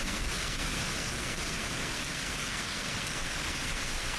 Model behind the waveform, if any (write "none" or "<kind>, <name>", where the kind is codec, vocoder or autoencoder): codec, SNAC